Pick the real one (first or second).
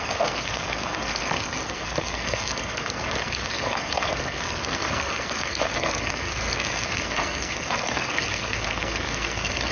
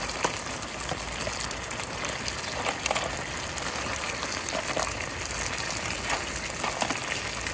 second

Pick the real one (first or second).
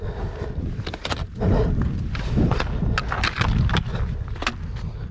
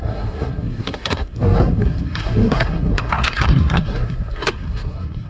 first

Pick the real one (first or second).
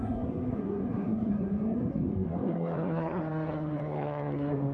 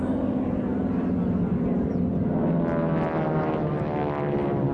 second